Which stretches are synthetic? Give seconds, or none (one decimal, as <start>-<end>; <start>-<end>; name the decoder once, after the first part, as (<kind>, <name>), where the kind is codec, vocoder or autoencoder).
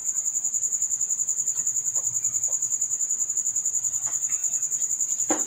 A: none